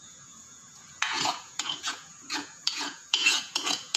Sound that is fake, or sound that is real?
fake